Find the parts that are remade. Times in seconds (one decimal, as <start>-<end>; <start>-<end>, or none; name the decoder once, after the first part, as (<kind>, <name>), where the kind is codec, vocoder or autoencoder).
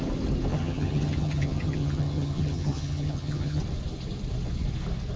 0.5-3.6 (vocoder, HiFi-GAN)